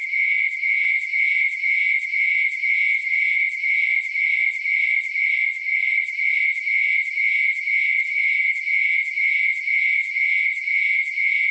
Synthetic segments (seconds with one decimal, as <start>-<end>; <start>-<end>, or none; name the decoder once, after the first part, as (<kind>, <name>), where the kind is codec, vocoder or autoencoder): 0.0-3.8 (vocoder, Vocos); 6.4-11.5